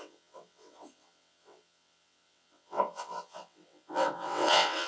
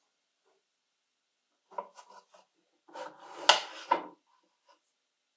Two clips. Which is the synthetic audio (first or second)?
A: first